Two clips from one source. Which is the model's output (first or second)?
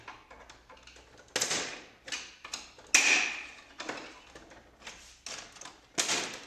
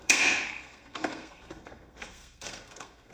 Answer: second